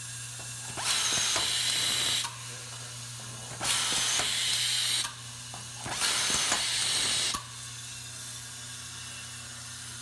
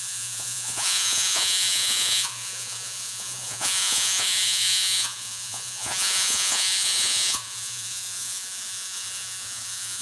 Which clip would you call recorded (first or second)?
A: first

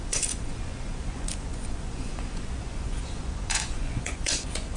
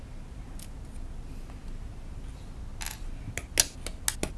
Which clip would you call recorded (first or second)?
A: second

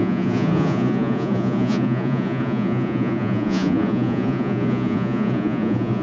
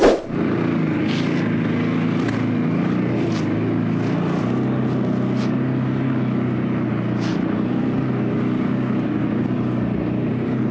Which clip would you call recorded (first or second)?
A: second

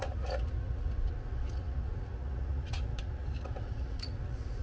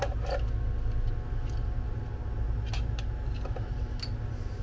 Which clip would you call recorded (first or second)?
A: second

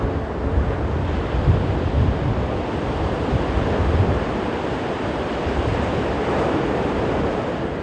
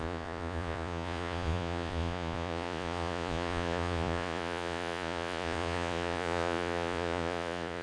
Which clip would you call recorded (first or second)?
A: first